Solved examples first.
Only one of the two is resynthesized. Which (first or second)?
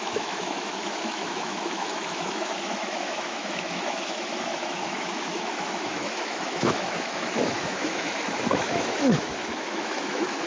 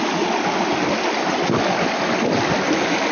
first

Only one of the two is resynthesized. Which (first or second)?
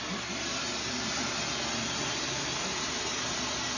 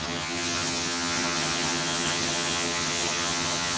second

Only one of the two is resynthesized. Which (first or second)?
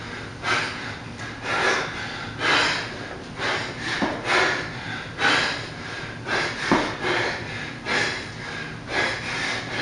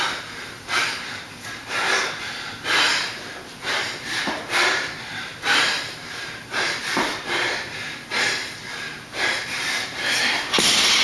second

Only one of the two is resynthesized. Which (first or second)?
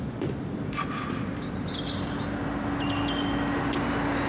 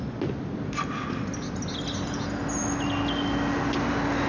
first